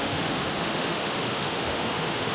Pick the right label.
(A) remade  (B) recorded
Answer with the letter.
A